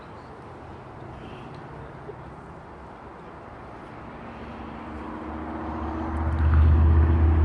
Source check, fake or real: real